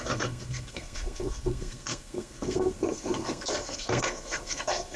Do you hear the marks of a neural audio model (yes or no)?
yes